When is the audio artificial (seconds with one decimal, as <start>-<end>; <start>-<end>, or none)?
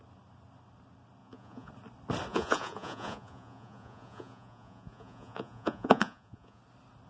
1.2-1.7; 2.3-6.6